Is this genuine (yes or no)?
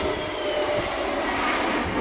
yes